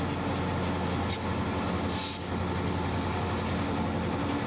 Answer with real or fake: real